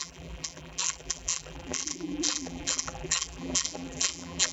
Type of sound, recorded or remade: remade